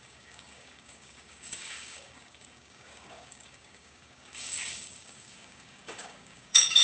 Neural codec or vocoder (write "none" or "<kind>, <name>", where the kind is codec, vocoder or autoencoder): codec, DAC